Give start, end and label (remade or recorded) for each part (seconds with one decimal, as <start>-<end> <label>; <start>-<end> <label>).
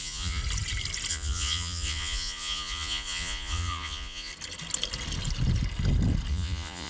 0.0-0.4 remade; 0.4-1.1 recorded; 1.1-4.3 remade; 4.3-6.3 recorded; 6.3-6.9 remade